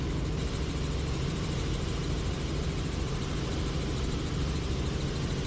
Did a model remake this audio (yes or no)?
yes